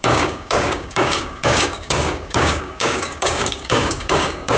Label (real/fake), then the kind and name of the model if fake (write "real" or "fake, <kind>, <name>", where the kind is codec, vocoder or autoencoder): fake, codec, DAC